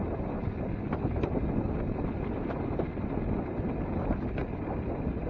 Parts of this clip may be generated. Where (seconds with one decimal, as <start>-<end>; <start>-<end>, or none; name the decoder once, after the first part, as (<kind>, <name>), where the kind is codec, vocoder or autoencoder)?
4.4-5.3 (vocoder, BigVGAN v2)